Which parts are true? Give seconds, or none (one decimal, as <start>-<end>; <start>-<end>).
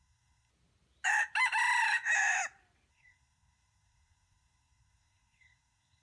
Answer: 0.5-2.9